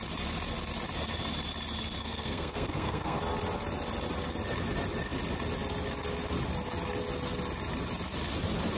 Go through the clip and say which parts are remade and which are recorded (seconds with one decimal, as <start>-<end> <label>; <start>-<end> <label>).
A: 0.0-2.0 recorded; 2.0-3.2 remade; 3.2-8.8 recorded